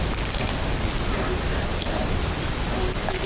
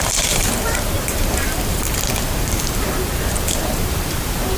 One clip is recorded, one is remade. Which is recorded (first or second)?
first